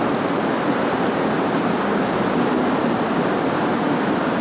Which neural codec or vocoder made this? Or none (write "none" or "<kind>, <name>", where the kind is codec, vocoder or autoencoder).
none